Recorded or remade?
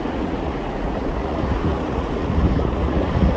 remade